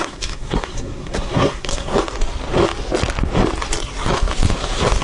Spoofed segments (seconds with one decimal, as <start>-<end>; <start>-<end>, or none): 0.0-1.9